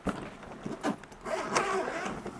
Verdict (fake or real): real